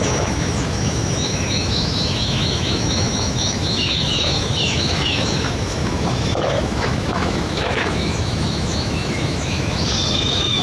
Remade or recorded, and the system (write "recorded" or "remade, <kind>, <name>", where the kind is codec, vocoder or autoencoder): remade, autoencoder, DAC-VAE